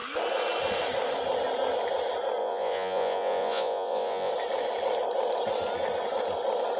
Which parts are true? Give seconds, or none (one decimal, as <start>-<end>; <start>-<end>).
0.0-2.4; 4.3-6.8